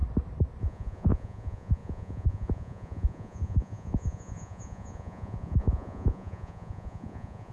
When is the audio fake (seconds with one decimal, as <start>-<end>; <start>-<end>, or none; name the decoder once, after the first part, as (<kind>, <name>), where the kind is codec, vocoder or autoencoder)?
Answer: 0.6-7.5 (vocoder, Vocos)